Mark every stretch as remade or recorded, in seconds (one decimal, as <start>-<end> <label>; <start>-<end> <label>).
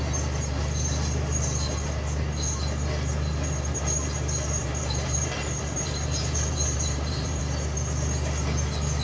0.0-4.6 recorded; 4.6-7.4 remade; 7.4-9.0 recorded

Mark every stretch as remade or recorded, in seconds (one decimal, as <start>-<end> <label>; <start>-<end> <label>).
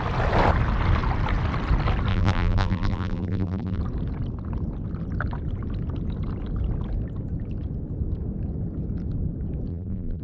0.0-2.1 recorded; 2.1-3.8 remade; 3.8-9.7 recorded; 9.7-10.2 remade